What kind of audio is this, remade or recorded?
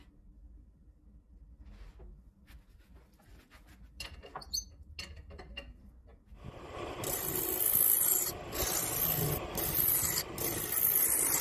recorded